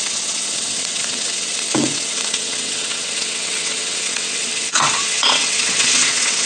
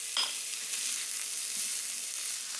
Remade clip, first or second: first